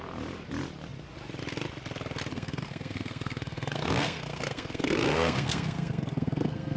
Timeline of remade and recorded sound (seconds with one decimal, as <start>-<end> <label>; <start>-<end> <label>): 0.0-2.3 recorded; 2.3-6.8 remade